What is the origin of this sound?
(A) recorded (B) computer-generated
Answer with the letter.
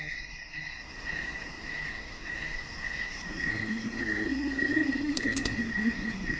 B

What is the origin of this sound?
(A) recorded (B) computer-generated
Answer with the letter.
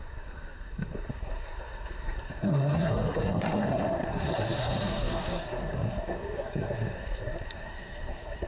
B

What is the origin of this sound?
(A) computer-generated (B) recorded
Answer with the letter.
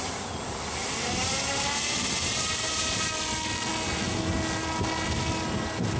B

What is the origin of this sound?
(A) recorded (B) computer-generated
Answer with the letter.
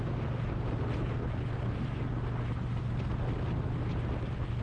A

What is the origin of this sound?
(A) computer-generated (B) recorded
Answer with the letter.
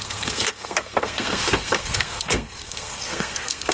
A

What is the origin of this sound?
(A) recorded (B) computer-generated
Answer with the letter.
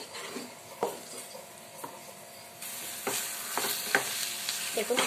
A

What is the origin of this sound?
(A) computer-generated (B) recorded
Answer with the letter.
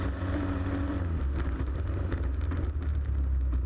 B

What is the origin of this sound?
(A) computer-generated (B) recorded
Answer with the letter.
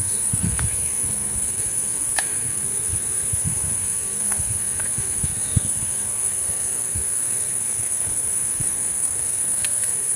A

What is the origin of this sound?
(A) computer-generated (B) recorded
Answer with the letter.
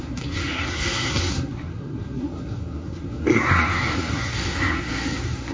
A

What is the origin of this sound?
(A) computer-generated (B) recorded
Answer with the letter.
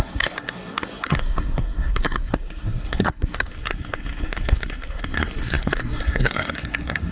A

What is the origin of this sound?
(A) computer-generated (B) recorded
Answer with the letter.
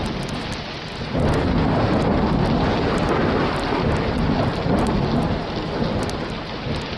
B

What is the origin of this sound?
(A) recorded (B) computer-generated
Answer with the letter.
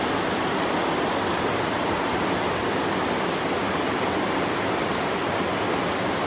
A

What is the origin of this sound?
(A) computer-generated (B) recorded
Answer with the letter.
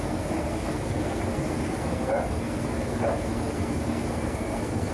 A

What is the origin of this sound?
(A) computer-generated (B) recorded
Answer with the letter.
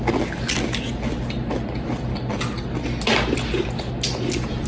B